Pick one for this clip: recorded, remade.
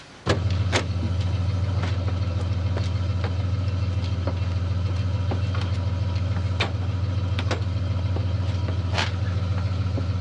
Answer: recorded